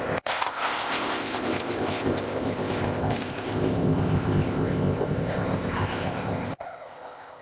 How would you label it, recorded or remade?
remade